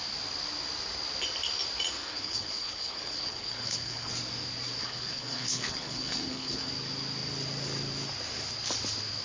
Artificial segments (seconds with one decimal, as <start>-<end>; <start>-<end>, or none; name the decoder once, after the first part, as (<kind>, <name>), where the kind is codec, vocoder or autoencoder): 2.0-4.1 (codec, HILCodec); 4.8-6.7

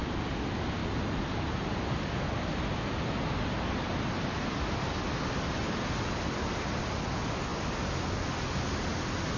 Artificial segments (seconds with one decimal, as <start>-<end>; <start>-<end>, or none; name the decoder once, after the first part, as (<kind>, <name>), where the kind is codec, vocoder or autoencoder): none